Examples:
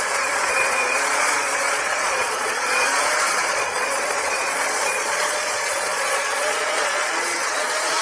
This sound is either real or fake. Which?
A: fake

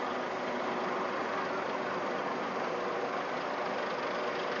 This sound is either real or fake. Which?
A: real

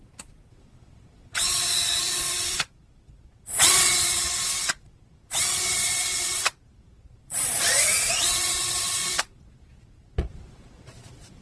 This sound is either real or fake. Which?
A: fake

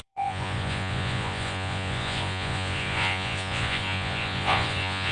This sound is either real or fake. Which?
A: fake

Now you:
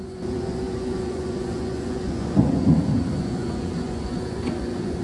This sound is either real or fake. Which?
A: fake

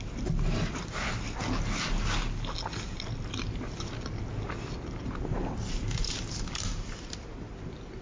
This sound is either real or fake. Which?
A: real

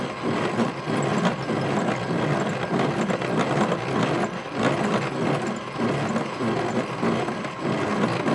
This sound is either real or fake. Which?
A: real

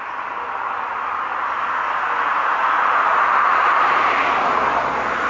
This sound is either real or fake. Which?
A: real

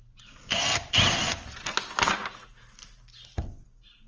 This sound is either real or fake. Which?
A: real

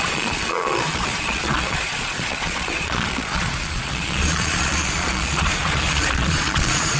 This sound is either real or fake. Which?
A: fake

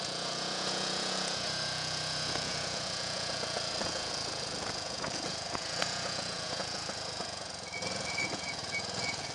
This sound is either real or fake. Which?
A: fake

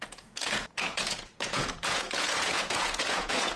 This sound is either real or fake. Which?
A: fake